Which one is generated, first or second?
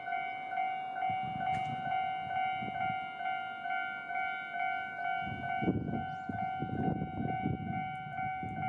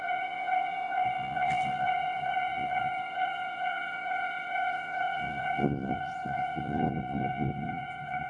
second